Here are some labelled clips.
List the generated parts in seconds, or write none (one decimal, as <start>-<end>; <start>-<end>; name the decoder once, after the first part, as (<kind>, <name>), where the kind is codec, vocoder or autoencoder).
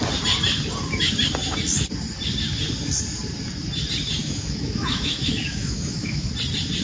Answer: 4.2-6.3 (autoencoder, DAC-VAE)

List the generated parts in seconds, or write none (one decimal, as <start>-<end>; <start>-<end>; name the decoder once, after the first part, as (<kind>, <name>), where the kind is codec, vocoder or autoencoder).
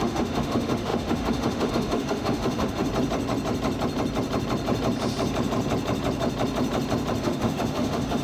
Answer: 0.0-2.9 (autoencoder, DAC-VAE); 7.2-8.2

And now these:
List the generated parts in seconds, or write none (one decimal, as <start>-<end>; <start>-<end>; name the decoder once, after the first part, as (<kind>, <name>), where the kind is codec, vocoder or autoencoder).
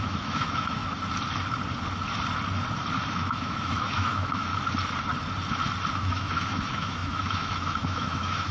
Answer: 0.0-0.8 (autoencoder, DAC-VAE); 3.1-4.5; 5.9-8.5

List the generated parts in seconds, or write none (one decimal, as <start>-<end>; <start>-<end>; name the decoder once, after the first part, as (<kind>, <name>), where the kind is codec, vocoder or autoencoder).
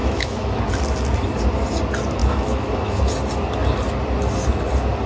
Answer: 0.0-0.6 (autoencoder, DAC-VAE); 2.2-3.0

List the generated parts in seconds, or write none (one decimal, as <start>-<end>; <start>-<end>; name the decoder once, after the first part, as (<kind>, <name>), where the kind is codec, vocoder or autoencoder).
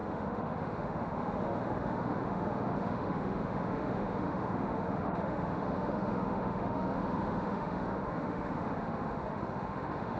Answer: 0.0-10.2 (autoencoder, DAC-VAE)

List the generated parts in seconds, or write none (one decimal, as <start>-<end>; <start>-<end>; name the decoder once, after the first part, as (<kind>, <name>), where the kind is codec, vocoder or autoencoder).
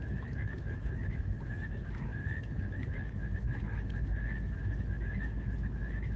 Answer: 0.0-6.2 (autoencoder, DAC-VAE)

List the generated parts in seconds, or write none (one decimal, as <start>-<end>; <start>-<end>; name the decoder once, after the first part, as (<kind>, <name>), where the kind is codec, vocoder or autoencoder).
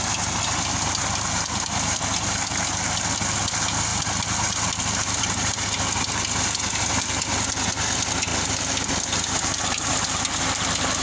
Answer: none